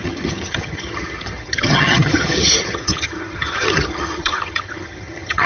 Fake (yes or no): yes